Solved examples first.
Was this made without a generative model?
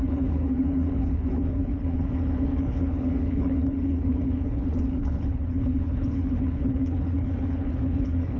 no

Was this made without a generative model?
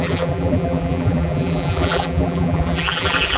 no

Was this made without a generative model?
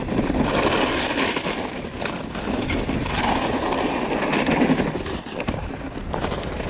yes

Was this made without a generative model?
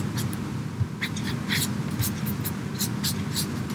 yes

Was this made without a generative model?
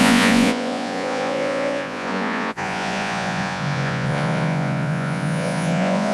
no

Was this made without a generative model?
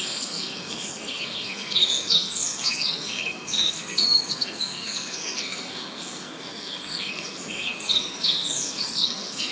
no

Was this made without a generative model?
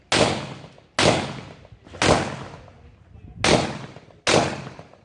yes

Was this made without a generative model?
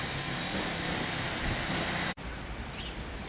no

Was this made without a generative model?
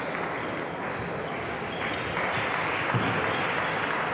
yes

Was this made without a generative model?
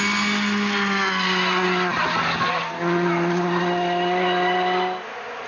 yes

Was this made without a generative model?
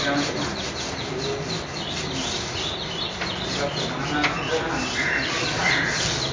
yes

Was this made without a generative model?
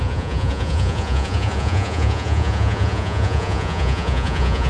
no